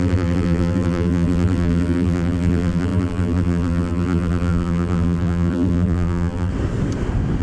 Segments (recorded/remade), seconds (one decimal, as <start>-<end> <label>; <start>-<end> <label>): 0.0-6.5 remade; 6.5-7.4 recorded